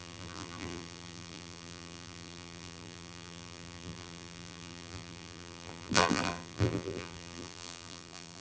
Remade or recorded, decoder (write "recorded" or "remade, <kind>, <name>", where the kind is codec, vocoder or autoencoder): remade, vocoder, BigVGAN v2